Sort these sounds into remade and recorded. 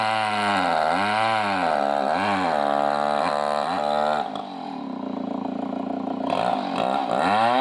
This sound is recorded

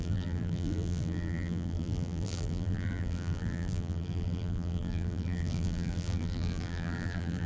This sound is remade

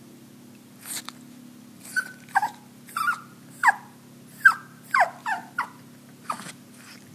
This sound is recorded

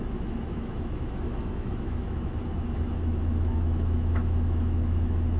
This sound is remade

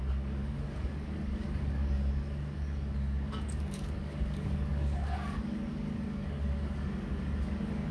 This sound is remade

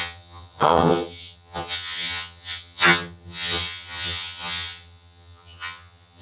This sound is remade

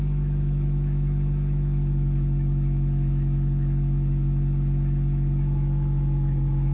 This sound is remade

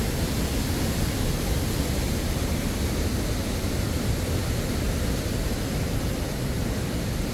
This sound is recorded